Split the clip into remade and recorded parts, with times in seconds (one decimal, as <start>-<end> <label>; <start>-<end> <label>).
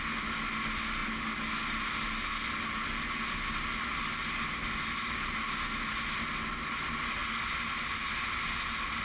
0.0-9.0 recorded